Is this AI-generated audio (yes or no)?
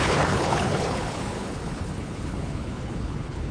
yes